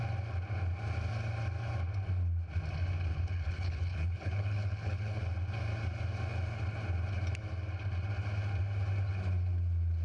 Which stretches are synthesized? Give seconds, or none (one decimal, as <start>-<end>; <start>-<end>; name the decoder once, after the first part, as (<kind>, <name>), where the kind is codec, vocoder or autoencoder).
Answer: 3.1-5.2 (codec, HILCodec)